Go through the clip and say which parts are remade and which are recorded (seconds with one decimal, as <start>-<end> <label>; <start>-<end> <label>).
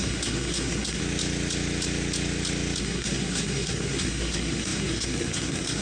0.0-1.0 remade; 1.0-2.8 recorded; 2.8-5.8 remade